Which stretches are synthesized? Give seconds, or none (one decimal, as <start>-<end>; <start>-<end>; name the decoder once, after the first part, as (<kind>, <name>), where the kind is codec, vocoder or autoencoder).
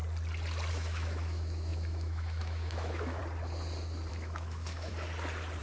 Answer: 0.7-3.2 (autoencoder, DAC-VAE); 4.1-4.9